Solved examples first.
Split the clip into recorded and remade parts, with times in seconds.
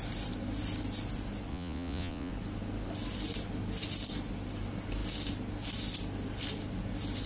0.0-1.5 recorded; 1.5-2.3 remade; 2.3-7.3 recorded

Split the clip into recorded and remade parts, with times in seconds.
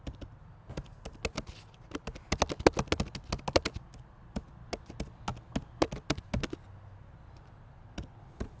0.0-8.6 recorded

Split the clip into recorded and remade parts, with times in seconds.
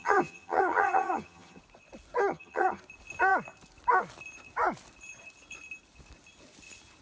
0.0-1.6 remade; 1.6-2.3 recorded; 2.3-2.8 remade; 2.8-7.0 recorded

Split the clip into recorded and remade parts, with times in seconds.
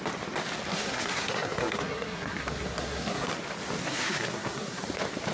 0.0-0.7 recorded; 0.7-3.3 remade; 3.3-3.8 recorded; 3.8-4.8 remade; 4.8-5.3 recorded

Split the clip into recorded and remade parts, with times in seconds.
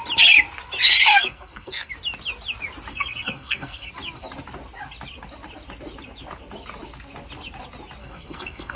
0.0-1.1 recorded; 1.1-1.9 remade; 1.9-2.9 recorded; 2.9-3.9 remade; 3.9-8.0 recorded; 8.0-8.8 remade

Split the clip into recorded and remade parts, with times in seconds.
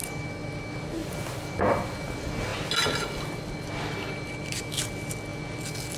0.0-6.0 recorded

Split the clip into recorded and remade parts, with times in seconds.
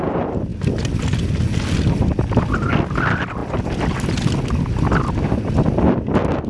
0.0-6.5 recorded